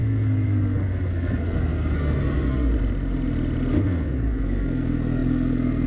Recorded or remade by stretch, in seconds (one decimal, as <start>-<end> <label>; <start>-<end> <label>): 0.0-2.7 remade; 2.7-3.7 recorded; 3.7-5.9 remade